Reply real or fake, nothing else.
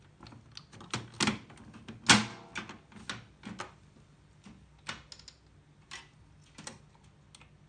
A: real